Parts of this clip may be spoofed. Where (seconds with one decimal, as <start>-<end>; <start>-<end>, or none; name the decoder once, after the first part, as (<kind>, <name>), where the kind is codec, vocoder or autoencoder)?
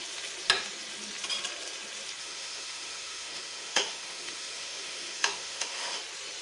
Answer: 2.2-6.0 (autoencoder, DAC-VAE)